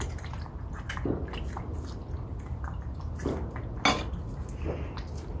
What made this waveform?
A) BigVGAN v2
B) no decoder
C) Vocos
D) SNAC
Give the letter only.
B